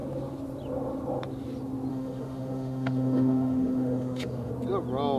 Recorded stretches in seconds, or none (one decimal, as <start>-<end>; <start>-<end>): 0.0-1.9; 4.5-5.2